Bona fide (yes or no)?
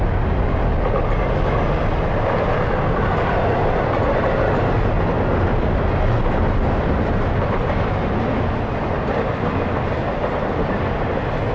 yes